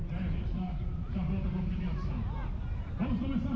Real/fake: real